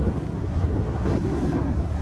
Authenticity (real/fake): fake